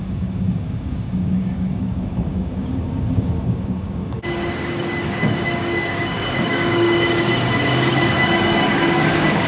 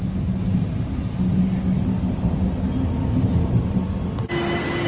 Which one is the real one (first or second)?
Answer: second